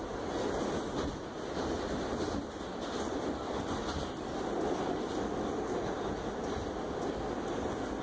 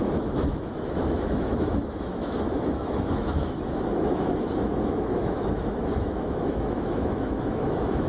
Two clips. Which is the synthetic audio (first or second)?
second